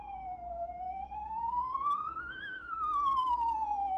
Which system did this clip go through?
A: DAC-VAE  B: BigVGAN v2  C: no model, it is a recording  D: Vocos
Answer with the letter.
A